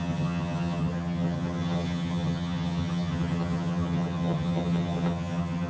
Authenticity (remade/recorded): remade